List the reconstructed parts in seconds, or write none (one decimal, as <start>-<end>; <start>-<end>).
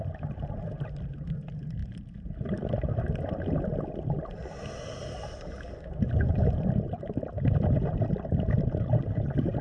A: none